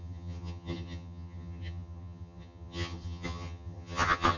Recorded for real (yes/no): no